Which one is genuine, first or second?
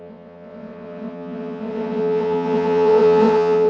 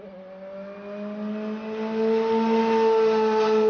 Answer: second